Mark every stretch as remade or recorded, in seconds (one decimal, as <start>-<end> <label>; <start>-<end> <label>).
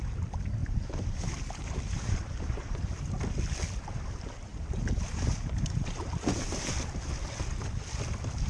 0.0-0.6 recorded; 0.6-3.1 remade; 3.1-4.5 recorded; 4.5-6.7 remade; 6.7-8.5 recorded